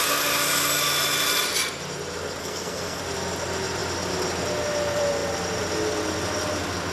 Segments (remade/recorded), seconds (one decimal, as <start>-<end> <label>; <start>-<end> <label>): 0.0-2.4 recorded; 2.4-3.0 remade; 3.0-6.9 recorded